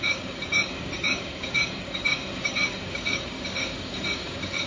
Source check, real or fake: fake